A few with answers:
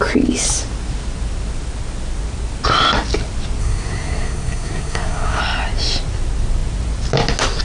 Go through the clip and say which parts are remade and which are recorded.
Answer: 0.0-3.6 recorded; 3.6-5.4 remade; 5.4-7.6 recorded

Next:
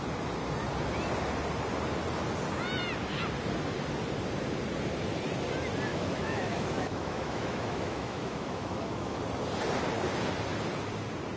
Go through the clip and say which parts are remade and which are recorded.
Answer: 0.0-5.9 recorded; 5.9-9.2 remade; 9.2-11.4 recorded

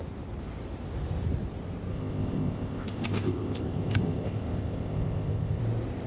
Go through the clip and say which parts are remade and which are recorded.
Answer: 0.0-1.9 recorded; 1.9-5.6 remade; 5.6-6.1 recorded

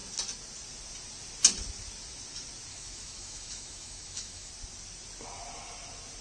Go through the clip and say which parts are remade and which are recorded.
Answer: 0.0-2.7 recorded; 2.7-4.5 remade; 4.5-6.2 recorded

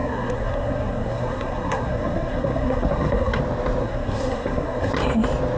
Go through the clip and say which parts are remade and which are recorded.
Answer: 0.0-3.4 remade; 3.4-3.8 recorded; 3.8-4.9 remade; 4.9-5.6 recorded